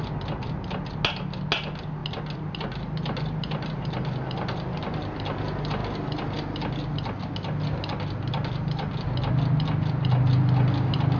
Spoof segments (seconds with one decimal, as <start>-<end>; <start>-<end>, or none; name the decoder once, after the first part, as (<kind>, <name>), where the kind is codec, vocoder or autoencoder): none